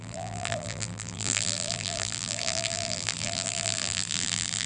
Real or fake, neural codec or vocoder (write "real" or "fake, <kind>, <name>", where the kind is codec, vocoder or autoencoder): fake, vocoder, BigVGAN v2